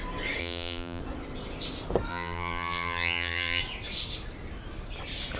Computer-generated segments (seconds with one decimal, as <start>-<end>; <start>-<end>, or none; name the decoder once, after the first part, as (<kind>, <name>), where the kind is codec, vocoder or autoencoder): 0.4-1.0 (vocoder, BigVGAN v2); 2.1-3.6